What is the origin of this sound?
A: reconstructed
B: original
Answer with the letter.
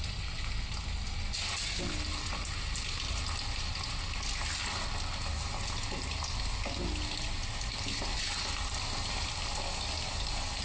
B